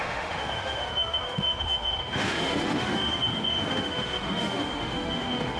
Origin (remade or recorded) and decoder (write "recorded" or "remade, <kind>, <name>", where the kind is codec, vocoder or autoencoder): remade, autoencoder, DAC-VAE